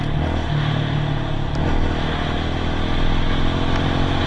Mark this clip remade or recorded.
recorded